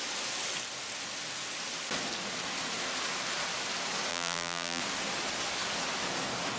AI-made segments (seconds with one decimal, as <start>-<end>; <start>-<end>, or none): 4.1-4.8